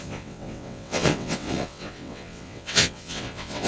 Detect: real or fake fake